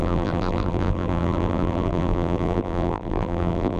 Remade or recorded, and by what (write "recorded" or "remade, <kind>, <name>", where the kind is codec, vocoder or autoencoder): remade, vocoder, BigVGAN v2